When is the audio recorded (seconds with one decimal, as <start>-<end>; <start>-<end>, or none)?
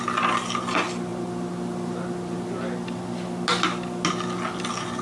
0.0-5.0